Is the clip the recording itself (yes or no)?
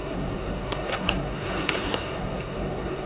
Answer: no